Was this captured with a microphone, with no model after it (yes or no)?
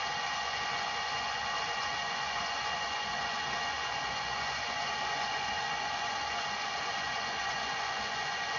no